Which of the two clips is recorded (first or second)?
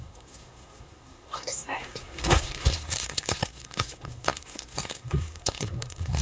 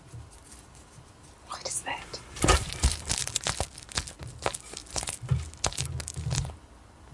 second